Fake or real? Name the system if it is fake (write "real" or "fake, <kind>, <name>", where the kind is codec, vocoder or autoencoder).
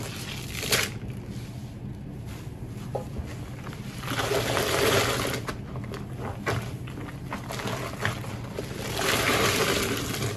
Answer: real